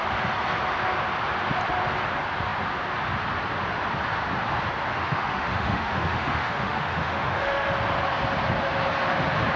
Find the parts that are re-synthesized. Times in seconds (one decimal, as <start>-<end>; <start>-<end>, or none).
4.9-7.7

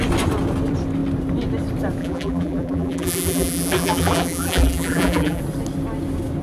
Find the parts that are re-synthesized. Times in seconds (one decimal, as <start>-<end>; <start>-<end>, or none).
2.0-5.4

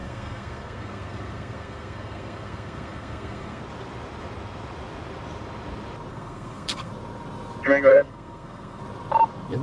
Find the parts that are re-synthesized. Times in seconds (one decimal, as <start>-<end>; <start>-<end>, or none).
0.0-3.6; 6.1-6.9; 7.9-8.8

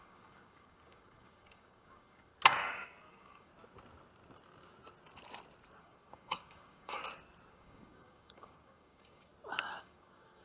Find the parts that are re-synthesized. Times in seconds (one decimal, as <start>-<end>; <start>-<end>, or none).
0.0-2.3; 3.1-3.5; 5.8-7.0; 7.5-9.3; 9.8-10.4

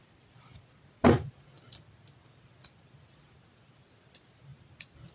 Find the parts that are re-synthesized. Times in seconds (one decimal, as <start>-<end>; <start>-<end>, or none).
none

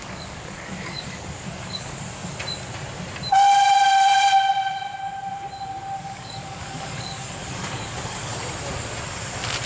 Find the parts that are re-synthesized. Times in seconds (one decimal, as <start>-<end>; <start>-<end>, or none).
0.0-2.2; 6.0-8.3

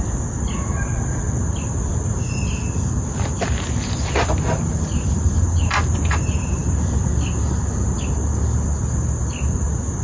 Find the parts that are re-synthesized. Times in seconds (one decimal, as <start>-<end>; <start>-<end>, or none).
none